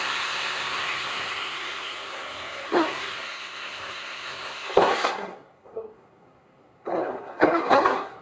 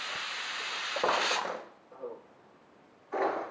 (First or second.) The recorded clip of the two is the second